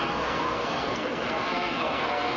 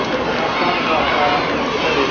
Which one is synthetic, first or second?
first